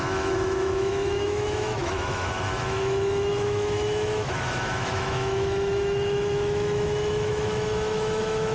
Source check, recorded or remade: remade